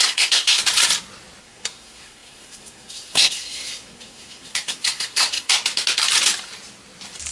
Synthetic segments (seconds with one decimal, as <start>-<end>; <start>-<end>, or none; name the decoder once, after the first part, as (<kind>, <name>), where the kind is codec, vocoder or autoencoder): 0.0-0.6 (codec, SNAC); 1.4-5.5